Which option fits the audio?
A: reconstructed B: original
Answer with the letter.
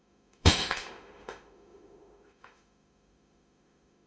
A